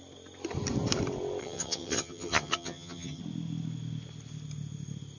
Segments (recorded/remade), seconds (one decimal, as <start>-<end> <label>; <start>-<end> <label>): 0.0-1.4 recorded; 1.4-3.2 remade; 3.2-5.2 recorded